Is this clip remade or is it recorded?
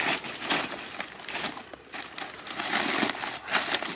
recorded